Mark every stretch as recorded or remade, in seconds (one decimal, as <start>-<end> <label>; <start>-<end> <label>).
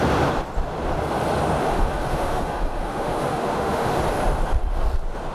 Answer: 0.0-1.6 recorded; 1.6-4.0 remade; 4.0-5.3 recorded